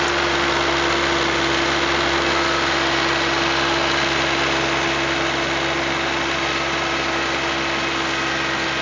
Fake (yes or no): no